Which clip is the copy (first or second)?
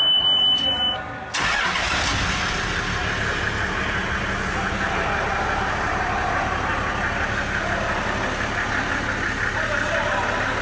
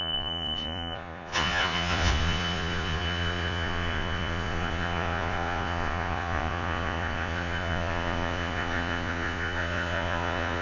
second